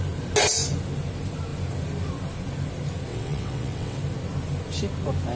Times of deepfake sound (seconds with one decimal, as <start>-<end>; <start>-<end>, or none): 3.1-4.0